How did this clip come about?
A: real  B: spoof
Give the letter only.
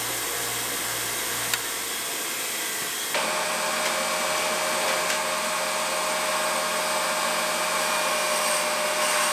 A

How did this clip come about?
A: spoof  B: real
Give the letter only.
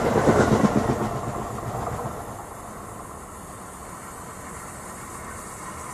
B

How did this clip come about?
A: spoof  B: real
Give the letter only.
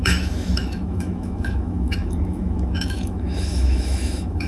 A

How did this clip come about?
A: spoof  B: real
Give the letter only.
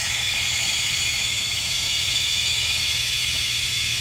A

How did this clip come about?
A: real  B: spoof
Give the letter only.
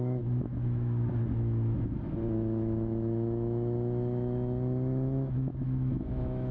B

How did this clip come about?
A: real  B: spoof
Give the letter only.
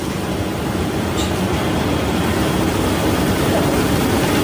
A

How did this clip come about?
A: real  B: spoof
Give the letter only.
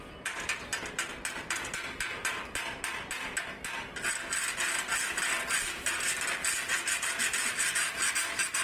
A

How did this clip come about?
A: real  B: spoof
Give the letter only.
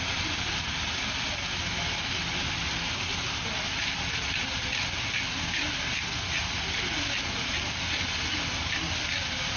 A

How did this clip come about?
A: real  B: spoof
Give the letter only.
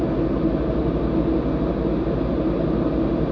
A